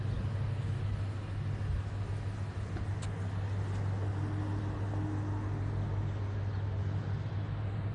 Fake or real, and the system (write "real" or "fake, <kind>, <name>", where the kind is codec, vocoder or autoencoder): real